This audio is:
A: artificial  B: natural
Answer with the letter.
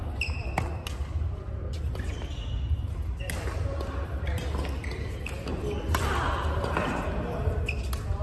B